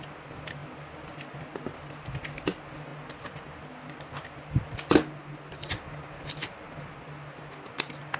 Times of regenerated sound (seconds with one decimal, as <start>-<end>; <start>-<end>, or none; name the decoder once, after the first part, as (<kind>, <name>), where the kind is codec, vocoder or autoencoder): none